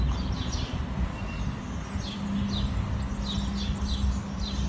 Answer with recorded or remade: recorded